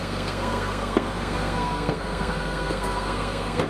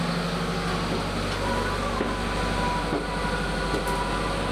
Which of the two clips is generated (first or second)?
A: first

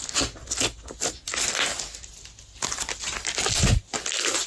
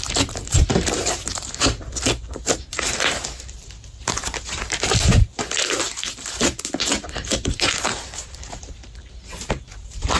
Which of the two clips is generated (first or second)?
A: second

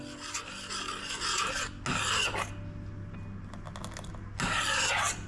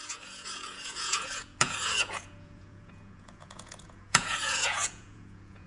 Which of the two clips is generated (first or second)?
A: second